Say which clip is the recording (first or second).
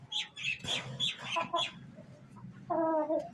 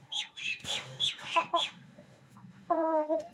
first